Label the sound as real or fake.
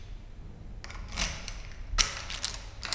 real